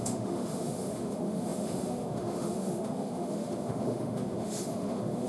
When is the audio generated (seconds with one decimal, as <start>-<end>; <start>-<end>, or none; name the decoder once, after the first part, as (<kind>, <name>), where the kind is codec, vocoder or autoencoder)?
0.0-5.3 (autoencoder, DAC-VAE)